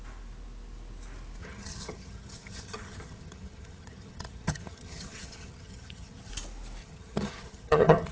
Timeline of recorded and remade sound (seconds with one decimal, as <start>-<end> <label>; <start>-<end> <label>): 0.0-1.4 recorded; 1.4-6.3 remade; 6.3-6.8 recorded; 6.8-8.1 remade

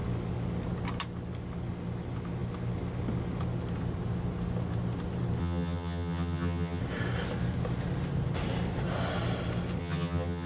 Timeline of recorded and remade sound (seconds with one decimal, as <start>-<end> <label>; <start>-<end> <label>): 0.0-5.4 recorded; 5.4-6.8 remade; 6.8-9.8 recorded; 9.8-10.5 remade

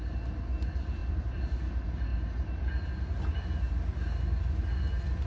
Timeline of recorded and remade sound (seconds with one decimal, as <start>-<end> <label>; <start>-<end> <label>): 0.0-5.3 recorded

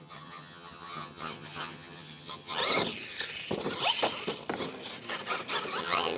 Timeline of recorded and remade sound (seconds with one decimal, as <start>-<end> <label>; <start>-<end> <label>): 0.0-2.6 remade; 2.6-5.8 recorded; 5.8-6.2 remade

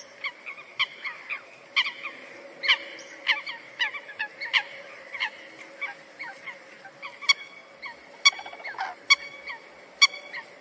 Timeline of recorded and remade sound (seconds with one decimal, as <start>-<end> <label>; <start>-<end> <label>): 0.0-10.6 recorded

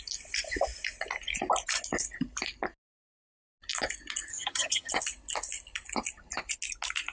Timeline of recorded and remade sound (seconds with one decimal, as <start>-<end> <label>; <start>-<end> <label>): 0.0-4.3 recorded; 4.3-4.9 remade; 4.9-7.1 recorded

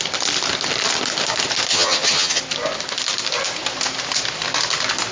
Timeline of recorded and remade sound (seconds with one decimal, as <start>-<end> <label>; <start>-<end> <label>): 0.0-1.7 recorded; 1.7-2.4 remade; 2.4-5.1 recorded

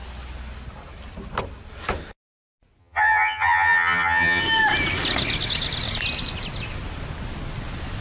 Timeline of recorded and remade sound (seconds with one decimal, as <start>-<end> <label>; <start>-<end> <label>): 0.0-2.8 recorded; 2.8-4.4 remade; 4.4-8.0 recorded